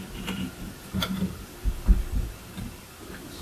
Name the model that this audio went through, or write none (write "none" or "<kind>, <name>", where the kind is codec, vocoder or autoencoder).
none